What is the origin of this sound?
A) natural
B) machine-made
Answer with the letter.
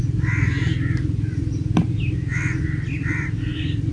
A